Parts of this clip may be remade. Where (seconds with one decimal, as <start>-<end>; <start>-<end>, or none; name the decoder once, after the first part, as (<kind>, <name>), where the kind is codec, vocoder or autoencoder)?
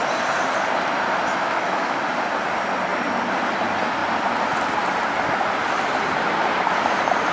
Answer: 1.3-2.0 (autoencoder, DAC-VAE)